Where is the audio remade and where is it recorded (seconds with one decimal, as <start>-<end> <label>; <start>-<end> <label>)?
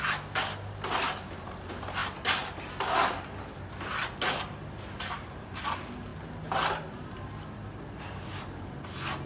0.0-9.3 recorded